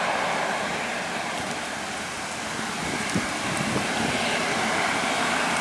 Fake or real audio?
real